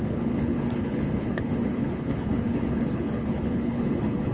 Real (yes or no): no